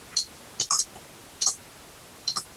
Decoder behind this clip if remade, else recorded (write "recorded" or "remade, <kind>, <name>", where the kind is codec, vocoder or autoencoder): recorded